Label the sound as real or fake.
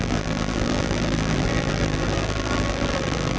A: fake